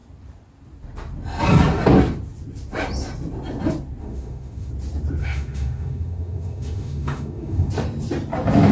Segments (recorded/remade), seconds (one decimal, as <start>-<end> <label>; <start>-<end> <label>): 0.0-4.0 recorded; 4.0-4.7 remade; 4.7-5.2 recorded; 5.2-7.7 remade; 7.7-8.7 recorded